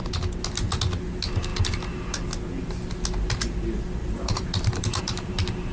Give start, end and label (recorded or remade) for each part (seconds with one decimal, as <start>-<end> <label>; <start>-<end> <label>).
0.0-4.0 recorded; 4.0-5.0 remade; 5.0-5.7 recorded